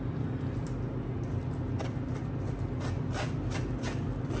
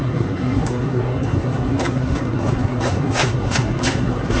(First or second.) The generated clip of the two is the second